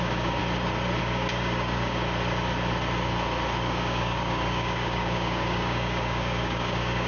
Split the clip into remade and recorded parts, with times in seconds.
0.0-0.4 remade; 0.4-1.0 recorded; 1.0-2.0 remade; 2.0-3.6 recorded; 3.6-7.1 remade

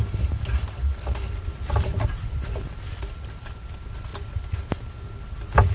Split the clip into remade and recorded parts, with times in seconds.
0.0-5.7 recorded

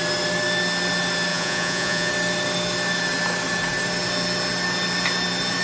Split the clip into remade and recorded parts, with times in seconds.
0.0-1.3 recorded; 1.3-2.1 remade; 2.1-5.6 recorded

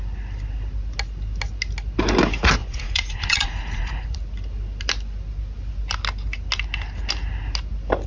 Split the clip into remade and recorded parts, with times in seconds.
0.0-2.6 recorded; 2.6-4.2 remade; 4.2-8.1 recorded

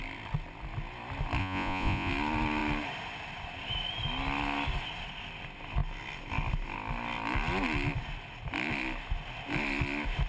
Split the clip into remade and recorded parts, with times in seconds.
0.0-1.4 recorded; 1.4-2.1 remade; 2.1-10.3 recorded